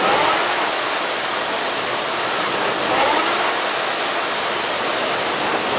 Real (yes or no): yes